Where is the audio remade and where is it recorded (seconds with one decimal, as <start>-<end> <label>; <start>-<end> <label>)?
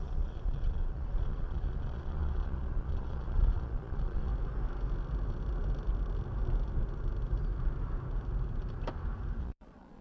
0.0-4.3 remade; 4.3-9.4 recorded; 9.4-10.0 remade